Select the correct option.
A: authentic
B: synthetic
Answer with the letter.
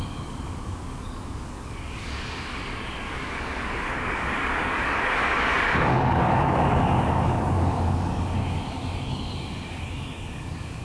B